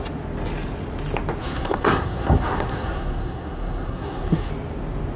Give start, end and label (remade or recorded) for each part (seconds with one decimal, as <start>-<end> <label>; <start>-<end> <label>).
0.0-1.4 recorded; 1.4-4.5 remade; 4.5-5.2 recorded